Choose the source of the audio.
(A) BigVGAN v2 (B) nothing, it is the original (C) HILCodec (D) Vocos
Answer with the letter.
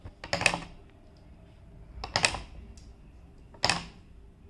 B